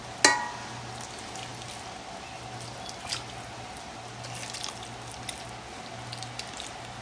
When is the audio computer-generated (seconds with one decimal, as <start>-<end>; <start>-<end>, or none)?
none